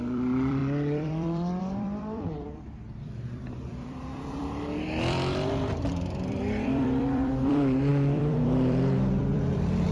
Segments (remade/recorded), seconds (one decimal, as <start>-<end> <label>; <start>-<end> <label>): 0.0-9.9 remade